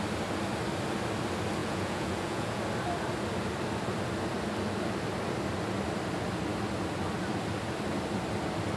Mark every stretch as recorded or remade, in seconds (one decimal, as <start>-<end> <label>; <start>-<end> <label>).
0.0-1.6 recorded; 1.6-2.6 remade; 2.6-8.8 recorded